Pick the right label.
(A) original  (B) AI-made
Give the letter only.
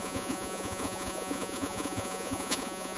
B